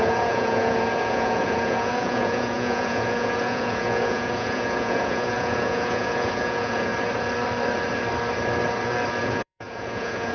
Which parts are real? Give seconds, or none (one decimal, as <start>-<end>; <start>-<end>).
6.9-9.2